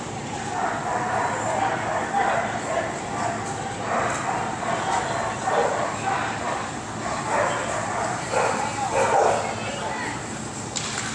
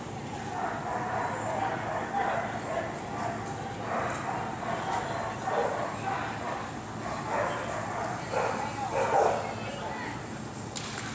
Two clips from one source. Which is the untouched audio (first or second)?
second